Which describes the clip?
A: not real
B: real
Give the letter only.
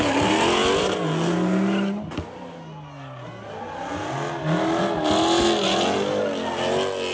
B